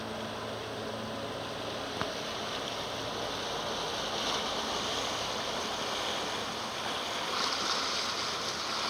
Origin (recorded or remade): recorded